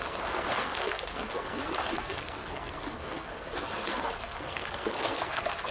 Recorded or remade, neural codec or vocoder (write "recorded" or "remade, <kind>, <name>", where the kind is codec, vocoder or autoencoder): remade, codec, SNAC